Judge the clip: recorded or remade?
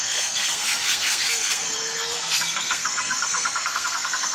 remade